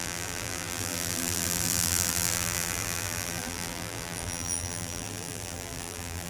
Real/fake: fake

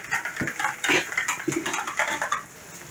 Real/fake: real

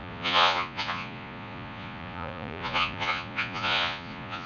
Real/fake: fake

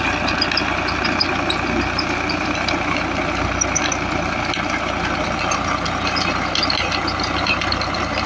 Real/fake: real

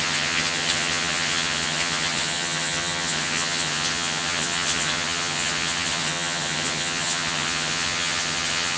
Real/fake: fake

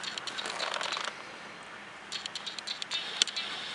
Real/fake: real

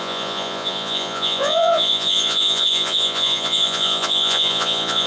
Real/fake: fake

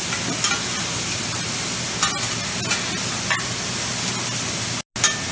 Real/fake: real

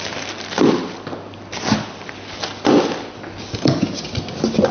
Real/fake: real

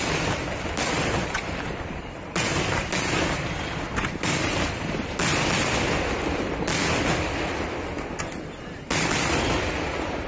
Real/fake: real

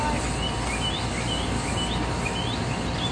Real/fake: real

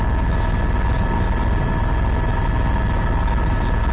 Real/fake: real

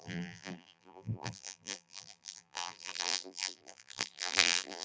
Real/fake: fake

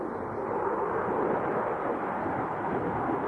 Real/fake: real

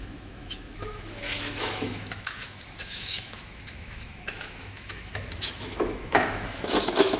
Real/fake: fake